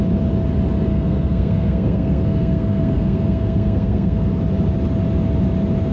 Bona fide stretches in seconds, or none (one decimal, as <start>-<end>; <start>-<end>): 0.0-0.9; 4.4-5.9